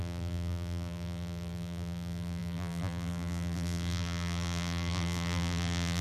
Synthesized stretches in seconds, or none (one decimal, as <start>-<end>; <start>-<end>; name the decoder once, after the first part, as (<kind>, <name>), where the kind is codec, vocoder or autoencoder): 0.0-6.0 (vocoder, BigVGAN v2)